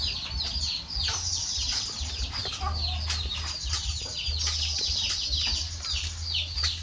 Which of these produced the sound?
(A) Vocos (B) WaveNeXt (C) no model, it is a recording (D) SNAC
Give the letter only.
C